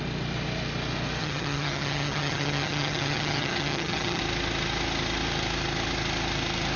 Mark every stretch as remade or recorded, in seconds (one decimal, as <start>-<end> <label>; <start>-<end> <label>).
0.0-1.2 recorded; 1.2-4.2 remade; 4.2-6.8 recorded